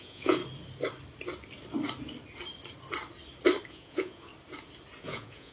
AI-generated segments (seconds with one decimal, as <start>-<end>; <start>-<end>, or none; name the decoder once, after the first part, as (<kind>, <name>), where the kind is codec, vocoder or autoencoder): 0.0-0.4 (vocoder, Vocos); 3.7-4.3; 5.0-5.5